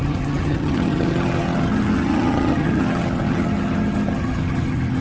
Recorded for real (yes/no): no